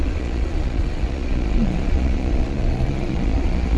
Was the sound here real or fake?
fake